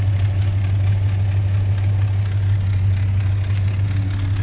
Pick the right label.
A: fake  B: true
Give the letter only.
B